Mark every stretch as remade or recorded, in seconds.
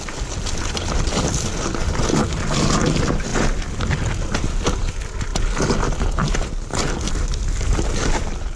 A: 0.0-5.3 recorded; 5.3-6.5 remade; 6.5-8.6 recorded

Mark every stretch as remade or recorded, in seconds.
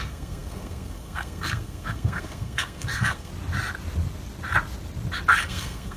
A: 0.0-3.3 remade; 3.3-5.4 recorded; 5.4-6.0 remade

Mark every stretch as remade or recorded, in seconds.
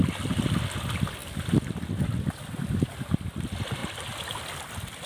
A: 0.0-5.1 recorded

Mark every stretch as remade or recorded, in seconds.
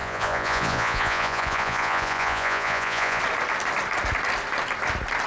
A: 0.0-3.2 remade; 3.2-5.3 recorded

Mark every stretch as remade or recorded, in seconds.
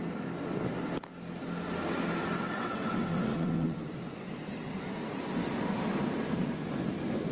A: 0.0-2.6 recorded; 2.6-3.9 remade; 3.9-7.3 recorded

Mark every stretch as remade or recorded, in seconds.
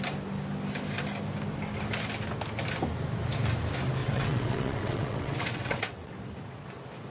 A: 0.0-4.0 recorded; 4.0-6.1 remade; 6.1-7.1 recorded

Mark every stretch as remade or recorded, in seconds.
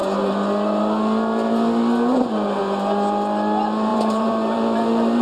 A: 0.0-3.9 recorded; 3.9-5.2 remade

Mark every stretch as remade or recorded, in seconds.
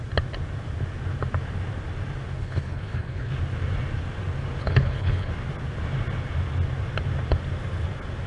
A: 0.0-2.4 recorded; 2.4-3.3 remade; 3.3-4.6 recorded; 4.6-5.3 remade; 5.3-8.3 recorded